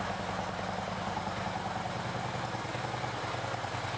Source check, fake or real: real